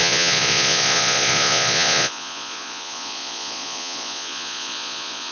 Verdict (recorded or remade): remade